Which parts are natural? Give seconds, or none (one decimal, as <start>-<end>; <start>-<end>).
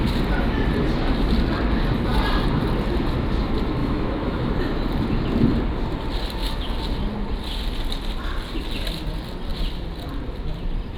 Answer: 0.0-3.8; 4.5-11.0